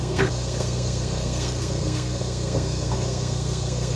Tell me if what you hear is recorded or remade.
remade